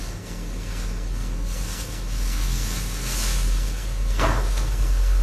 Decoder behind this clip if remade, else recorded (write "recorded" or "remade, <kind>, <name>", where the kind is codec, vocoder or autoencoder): remade, codec, SNAC